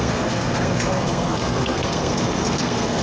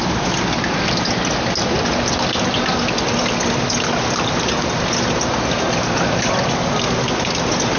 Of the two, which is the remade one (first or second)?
first